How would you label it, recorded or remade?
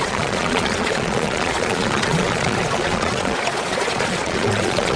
remade